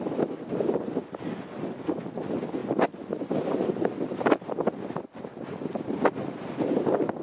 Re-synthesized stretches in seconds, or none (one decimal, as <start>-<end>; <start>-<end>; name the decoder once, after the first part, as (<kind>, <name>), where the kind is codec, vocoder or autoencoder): none